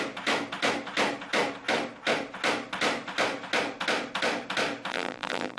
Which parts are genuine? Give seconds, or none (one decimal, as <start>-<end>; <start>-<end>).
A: 0.0-4.9